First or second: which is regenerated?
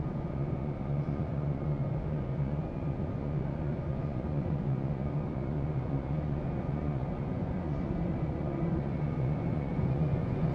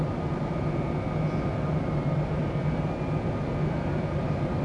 first